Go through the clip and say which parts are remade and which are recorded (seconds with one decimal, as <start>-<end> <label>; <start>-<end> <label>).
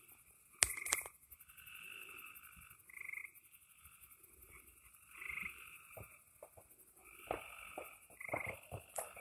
0.0-3.2 recorded; 3.2-3.8 remade; 3.8-4.7 recorded; 4.7-6.2 remade; 6.2-9.2 recorded